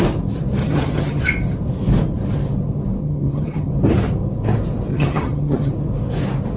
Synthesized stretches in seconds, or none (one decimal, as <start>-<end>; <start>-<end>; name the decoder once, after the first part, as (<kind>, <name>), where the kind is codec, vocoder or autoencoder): 0.6-1.2 (vocoder, HiFi-GAN); 3.0-3.7; 4.9-5.7